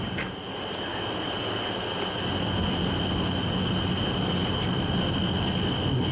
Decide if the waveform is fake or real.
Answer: real